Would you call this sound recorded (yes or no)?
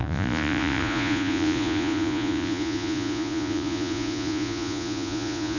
no